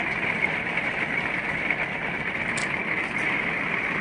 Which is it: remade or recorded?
recorded